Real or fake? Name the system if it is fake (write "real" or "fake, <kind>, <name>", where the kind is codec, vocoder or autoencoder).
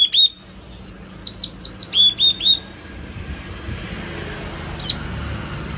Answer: real